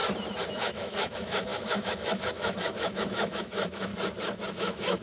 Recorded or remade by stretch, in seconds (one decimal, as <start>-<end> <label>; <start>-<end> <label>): 0.0-0.5 recorded; 0.5-3.9 remade; 3.9-4.5 recorded; 4.5-5.0 remade